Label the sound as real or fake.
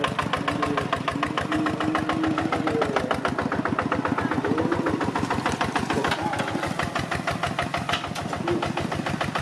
real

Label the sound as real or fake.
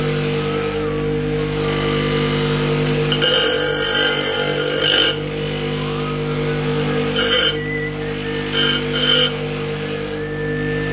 real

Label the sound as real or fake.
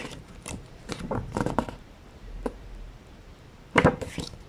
fake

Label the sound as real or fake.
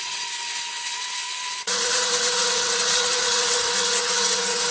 fake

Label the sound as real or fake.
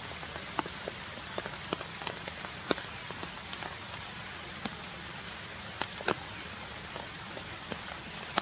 fake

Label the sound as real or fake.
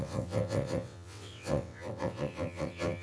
fake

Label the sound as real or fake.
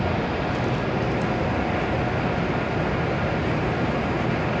real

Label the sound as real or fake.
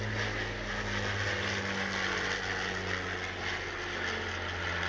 real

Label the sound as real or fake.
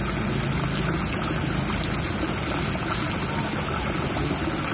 real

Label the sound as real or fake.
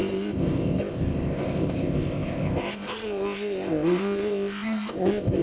fake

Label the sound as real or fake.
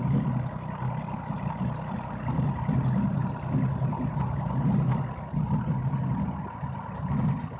real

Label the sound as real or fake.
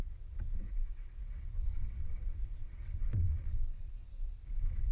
fake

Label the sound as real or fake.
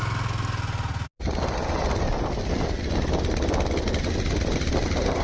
real